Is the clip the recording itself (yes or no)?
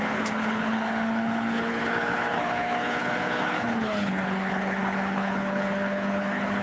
no